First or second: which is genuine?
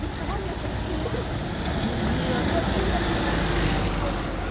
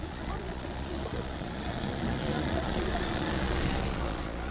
first